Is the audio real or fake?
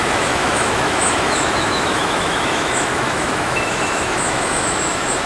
fake